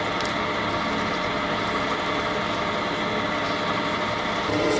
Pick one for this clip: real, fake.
real